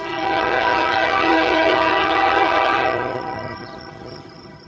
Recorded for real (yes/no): no